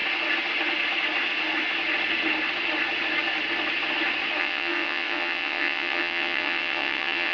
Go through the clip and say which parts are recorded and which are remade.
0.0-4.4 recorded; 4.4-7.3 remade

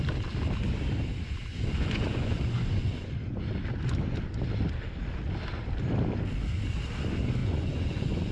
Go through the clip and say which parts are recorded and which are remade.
0.0-1.5 recorded; 1.5-3.5 remade; 3.5-7.4 recorded; 7.4-8.3 remade

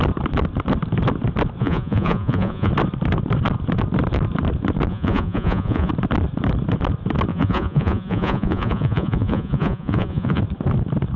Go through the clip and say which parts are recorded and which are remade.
0.0-1.6 recorded; 1.6-2.7 remade; 2.7-4.9 recorded; 4.9-5.9 remade; 5.9-7.3 recorded; 7.3-10.4 remade; 10.4-11.2 recorded

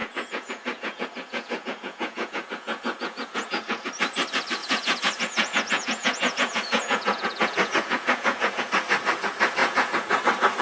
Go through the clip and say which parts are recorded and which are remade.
0.0-3.9 remade; 3.9-4.6 recorded; 4.6-8.7 remade; 8.7-9.6 recorded; 9.6-10.2 remade; 10.2-10.6 recorded

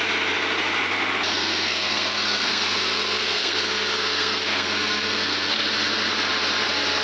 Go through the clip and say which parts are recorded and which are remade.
0.0-1.3 recorded; 1.3-5.5 remade; 5.5-7.0 recorded

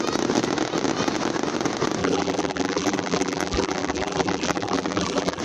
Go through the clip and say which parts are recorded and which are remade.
0.0-2.0 recorded; 2.0-5.4 remade

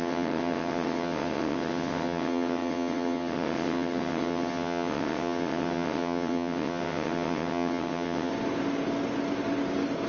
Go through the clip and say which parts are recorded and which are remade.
0.0-8.3 remade; 8.3-10.1 recorded